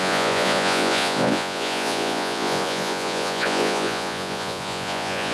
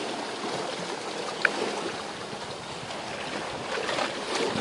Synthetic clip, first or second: first